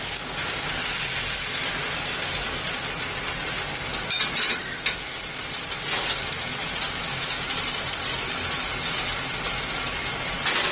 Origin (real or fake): real